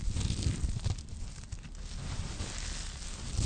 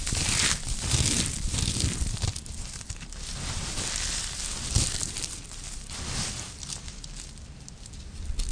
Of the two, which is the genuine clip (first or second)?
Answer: first